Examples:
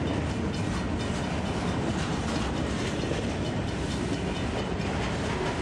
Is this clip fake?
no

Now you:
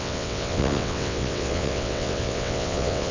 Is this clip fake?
yes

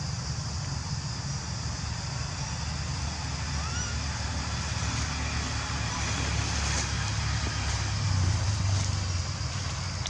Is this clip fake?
no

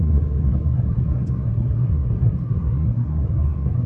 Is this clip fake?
yes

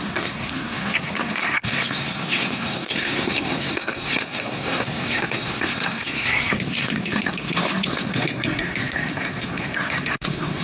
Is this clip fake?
yes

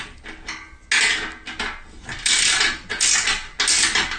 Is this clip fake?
no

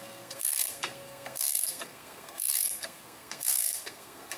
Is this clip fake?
yes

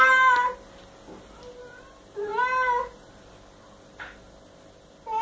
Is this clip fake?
no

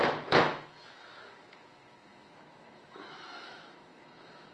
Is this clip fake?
yes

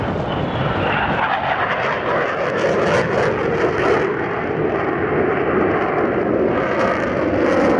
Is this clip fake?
no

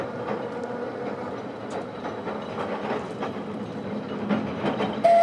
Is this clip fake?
no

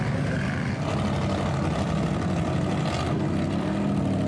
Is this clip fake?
no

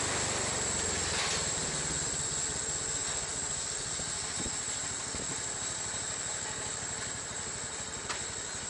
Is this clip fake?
no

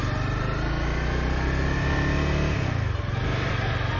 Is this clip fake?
no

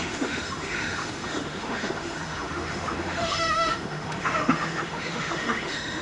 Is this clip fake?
yes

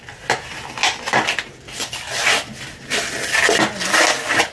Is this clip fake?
no